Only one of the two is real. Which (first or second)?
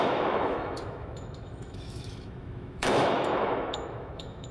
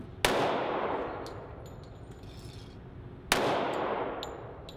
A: second